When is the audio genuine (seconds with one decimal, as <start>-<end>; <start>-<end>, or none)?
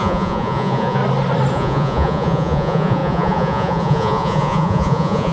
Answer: 1.0-1.5